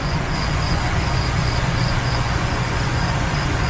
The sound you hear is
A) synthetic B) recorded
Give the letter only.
A